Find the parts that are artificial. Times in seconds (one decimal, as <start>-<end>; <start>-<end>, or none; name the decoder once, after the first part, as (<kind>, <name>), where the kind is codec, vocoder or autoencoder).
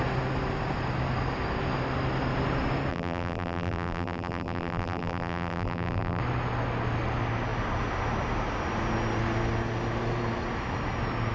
2.9-6.2 (vocoder, BigVGAN v2)